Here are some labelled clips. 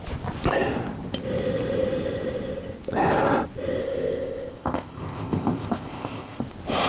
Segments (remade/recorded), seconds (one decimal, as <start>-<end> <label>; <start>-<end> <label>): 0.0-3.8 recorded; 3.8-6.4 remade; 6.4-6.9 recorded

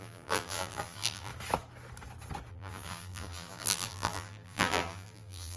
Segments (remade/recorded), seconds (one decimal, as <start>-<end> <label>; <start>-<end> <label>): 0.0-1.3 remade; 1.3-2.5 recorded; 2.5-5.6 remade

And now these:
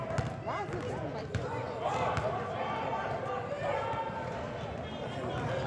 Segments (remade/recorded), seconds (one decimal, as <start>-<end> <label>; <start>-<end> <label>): 0.0-1.3 recorded; 1.3-1.8 remade; 1.8-5.7 recorded

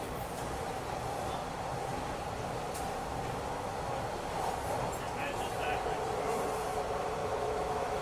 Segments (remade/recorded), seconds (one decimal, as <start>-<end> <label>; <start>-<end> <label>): 0.0-7.2 recorded; 7.2-8.0 remade

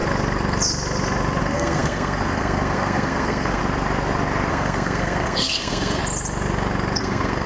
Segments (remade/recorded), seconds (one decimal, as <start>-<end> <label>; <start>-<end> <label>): 0.0-1.4 recorded; 1.4-3.6 remade; 3.6-4.5 recorded; 4.5-6.0 remade; 6.0-7.0 recorded; 7.0-7.5 remade